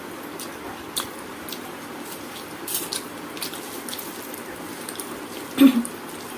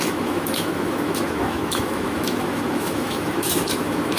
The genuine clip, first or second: first